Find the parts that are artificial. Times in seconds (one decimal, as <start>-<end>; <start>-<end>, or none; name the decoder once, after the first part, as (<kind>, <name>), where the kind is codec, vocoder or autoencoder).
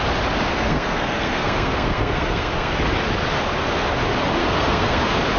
0.5-2.7 (codec, SNAC); 4.4-5.0